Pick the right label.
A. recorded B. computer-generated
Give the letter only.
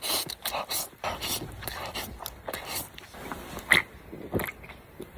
A